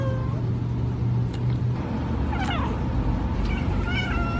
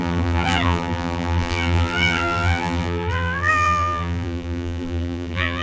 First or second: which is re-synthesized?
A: second